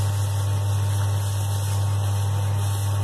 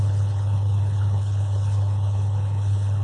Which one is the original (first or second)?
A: first